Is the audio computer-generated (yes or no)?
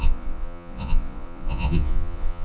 yes